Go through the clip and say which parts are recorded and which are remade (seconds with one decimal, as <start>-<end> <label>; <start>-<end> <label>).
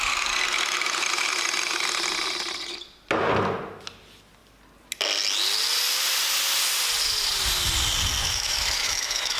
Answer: 0.0-8.2 recorded; 8.2-9.4 remade